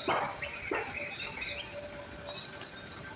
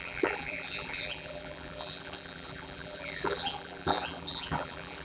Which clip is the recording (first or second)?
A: first